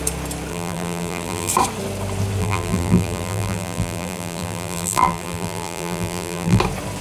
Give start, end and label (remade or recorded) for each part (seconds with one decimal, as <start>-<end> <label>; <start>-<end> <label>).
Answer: 0.0-0.5 recorded; 0.5-1.5 remade; 1.5-2.4 recorded; 2.4-6.6 remade; 6.6-7.0 recorded